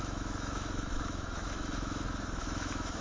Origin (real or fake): fake